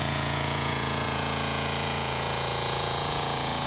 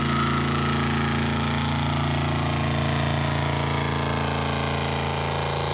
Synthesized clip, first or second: first